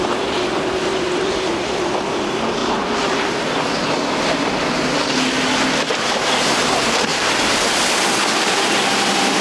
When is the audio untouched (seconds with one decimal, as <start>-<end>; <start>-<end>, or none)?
0.0-2.6; 3.4-7.1; 7.7-9.4